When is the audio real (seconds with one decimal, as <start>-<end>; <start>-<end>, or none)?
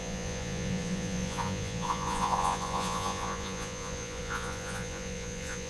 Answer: none